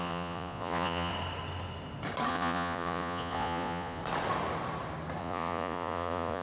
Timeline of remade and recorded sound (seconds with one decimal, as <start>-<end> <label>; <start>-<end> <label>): 0.0-1.1 remade; 1.1-2.3 recorded; 2.3-4.0 remade; 4.0-5.2 recorded; 5.2-6.4 remade